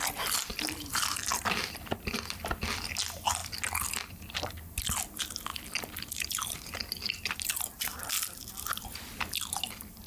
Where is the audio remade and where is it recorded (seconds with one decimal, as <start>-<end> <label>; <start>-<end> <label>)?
0.0-0.5 recorded; 0.5-2.5 remade; 2.5-5.5 recorded; 5.5-7.6 remade; 7.6-10.1 recorded